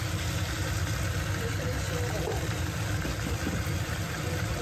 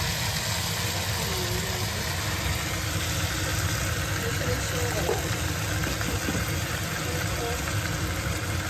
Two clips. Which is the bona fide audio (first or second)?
second